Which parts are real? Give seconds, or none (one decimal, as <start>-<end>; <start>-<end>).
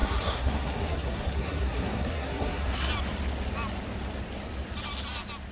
2.9-5.5